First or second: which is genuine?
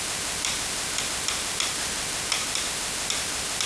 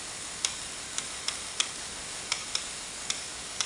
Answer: first